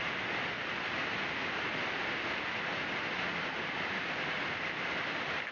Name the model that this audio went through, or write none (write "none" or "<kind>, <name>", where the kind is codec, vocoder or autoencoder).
none